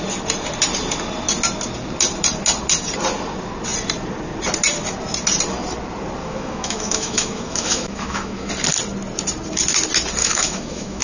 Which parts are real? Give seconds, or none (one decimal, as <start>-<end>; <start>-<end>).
0.0-6.2; 8.5-10.2